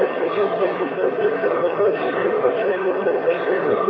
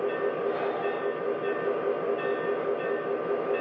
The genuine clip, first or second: second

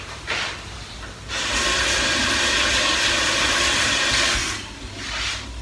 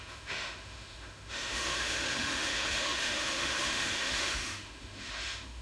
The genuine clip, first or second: first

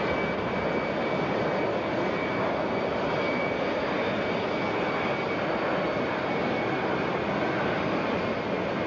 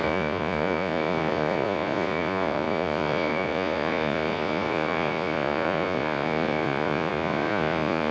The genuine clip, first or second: first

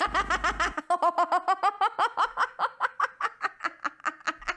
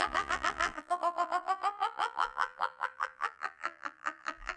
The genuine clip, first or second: first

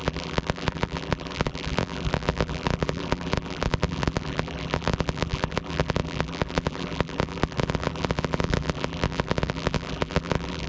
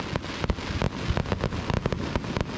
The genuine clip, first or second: second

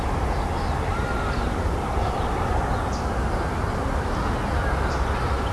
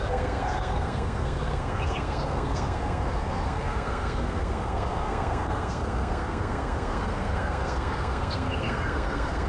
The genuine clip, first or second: first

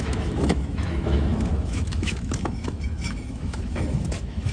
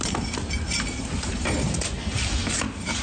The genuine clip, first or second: second